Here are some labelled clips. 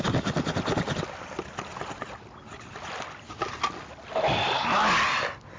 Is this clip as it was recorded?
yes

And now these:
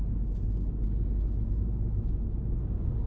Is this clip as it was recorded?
yes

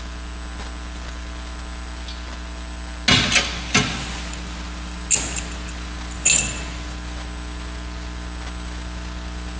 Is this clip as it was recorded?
yes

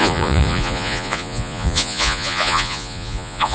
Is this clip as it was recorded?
no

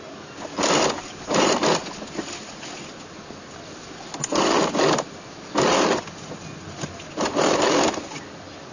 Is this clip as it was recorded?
yes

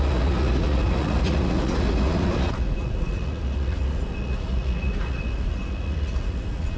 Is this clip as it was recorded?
no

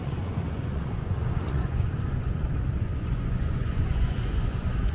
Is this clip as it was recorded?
no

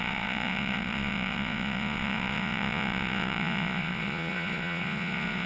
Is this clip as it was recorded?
no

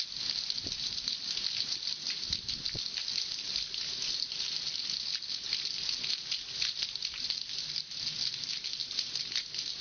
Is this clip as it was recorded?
yes